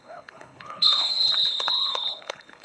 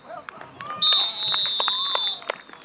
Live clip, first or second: second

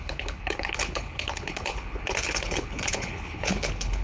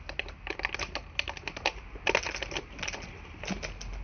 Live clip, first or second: second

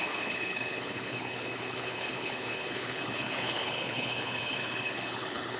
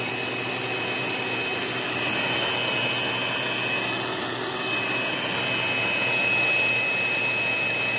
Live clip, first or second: second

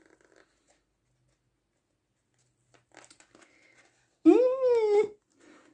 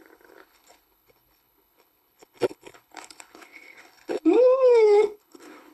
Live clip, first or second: first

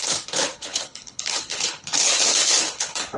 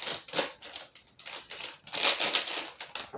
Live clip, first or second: second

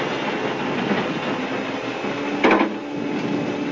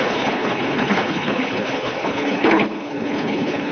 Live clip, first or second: first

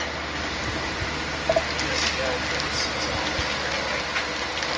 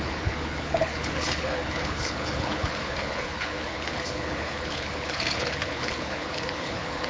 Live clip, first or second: first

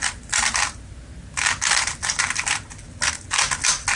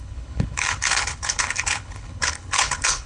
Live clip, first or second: first